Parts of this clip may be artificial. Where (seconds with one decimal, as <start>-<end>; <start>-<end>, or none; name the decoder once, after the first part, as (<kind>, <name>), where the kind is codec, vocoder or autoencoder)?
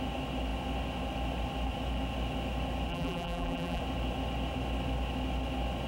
2.9-3.8 (vocoder, BigVGAN v2)